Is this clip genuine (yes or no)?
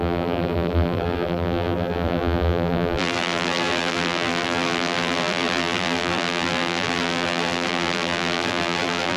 no